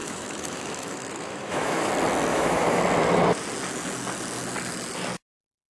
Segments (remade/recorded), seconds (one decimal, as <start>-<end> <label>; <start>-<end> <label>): 0.0-1.9 remade; 1.9-2.3 recorded; 2.3-2.8 remade; 2.8-5.7 recorded